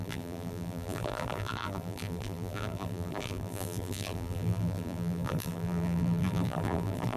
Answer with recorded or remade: remade